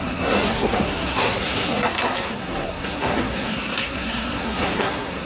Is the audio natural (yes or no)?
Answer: no